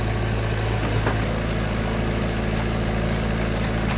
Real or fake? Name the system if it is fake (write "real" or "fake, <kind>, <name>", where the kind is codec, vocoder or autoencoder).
real